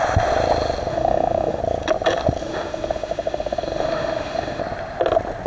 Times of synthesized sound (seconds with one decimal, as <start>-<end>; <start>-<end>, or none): 0.9-1.6; 2.4-4.6